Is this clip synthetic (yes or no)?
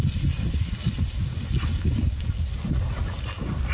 no